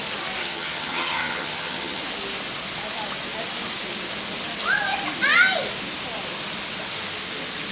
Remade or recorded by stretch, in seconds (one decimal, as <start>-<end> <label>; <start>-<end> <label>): 0.0-0.4 recorded; 0.4-2.0 remade; 2.0-7.7 recorded